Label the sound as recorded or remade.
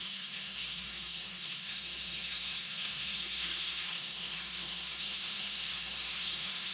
remade